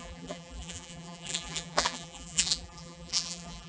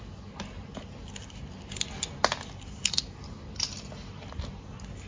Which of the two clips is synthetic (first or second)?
first